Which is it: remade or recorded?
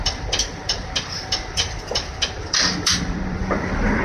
remade